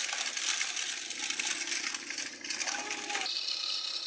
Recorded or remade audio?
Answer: recorded